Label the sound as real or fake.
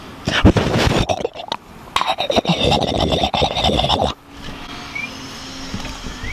real